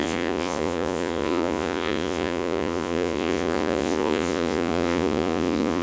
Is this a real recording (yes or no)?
no